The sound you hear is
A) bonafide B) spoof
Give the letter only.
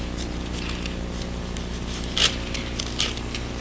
A